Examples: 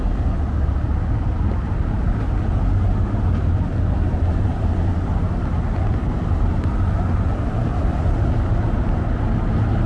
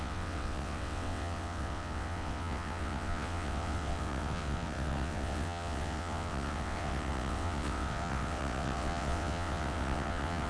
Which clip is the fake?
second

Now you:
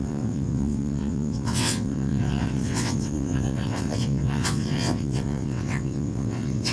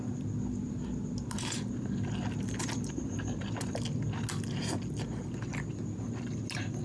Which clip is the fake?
first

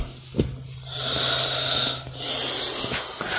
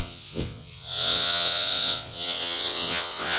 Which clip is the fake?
second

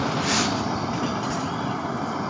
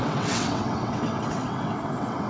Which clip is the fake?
second